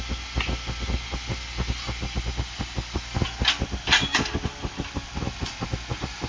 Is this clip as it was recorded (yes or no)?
yes